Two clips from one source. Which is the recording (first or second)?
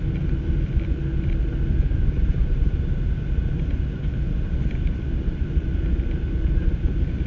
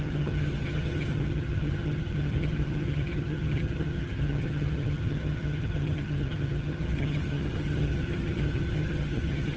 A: first